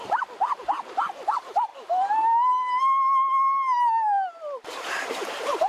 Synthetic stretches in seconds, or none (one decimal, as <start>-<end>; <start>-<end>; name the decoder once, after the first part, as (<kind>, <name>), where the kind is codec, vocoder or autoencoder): 0.6-1.7 (vocoder, BigVGAN v2); 4.8-5.7